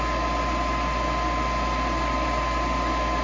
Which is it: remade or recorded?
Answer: recorded